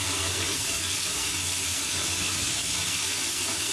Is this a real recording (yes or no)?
no